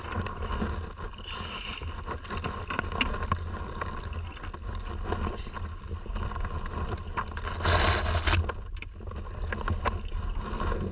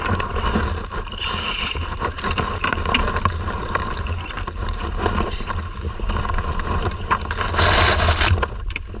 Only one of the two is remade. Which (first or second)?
second